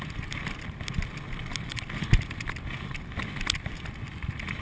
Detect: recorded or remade recorded